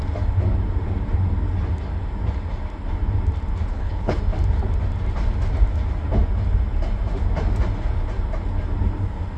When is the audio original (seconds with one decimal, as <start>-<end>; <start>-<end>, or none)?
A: 0.0-3.7; 4.2-9.4